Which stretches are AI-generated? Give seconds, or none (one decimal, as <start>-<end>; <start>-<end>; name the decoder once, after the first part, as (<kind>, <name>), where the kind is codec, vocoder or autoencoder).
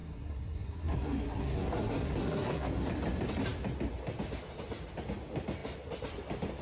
0.0-2.7 (codec, SNAC)